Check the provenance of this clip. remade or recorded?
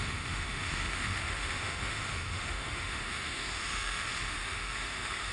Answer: remade